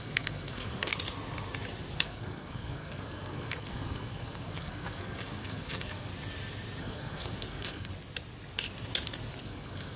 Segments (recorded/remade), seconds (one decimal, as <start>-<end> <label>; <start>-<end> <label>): 0.0-0.9 remade; 0.9-1.9 recorded; 1.9-6.1 remade; 6.1-6.8 recorded; 6.8-7.9 remade; 7.9-9.4 recorded; 9.4-10.0 remade